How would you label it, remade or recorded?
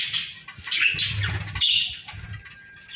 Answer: recorded